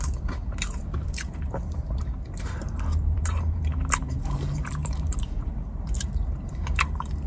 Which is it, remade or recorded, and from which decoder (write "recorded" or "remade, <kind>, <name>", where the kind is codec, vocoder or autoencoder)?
remade, vocoder, BigVGAN v2